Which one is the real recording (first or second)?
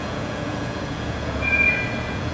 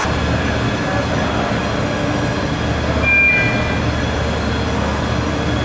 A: second